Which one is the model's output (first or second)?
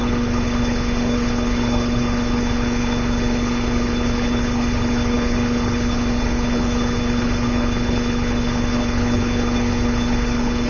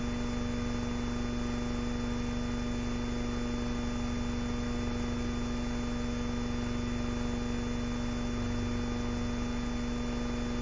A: first